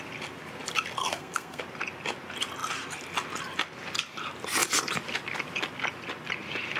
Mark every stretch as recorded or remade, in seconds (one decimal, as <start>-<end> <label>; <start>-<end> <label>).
0.0-1.0 recorded; 1.0-1.6 remade; 1.6-6.8 recorded